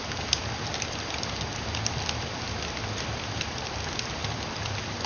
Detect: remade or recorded recorded